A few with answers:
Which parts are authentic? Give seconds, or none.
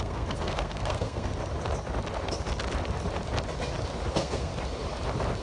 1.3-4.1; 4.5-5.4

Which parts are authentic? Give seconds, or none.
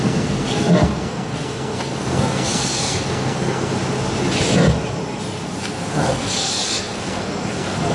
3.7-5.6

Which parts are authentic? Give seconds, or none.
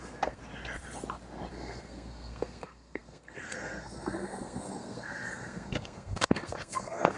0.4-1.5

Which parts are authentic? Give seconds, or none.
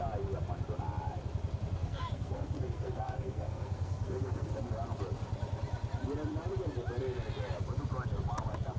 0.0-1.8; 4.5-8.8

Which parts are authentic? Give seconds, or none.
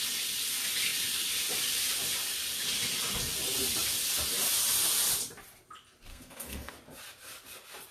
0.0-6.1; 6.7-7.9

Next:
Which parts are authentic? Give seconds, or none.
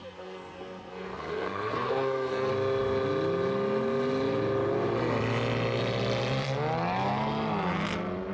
2.5-8.3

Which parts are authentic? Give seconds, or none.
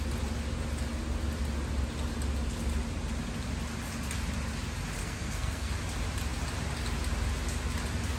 0.0-5.0; 5.7-8.2